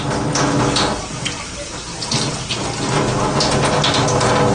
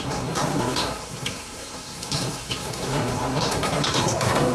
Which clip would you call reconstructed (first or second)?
second